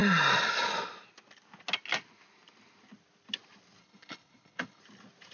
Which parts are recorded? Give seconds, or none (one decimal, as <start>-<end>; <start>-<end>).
0.0-3.8; 4.8-5.3